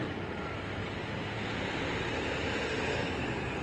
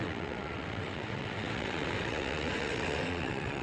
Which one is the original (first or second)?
first